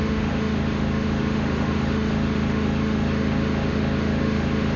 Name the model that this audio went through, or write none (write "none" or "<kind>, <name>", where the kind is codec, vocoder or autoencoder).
autoencoder, DAC-VAE